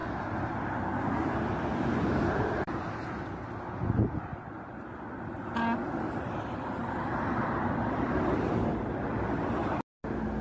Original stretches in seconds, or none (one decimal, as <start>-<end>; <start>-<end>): 0.0-10.4